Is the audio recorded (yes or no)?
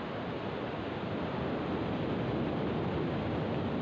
yes